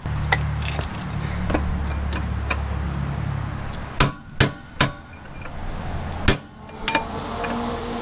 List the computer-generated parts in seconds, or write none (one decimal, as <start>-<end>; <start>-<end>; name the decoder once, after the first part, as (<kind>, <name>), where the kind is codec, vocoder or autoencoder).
none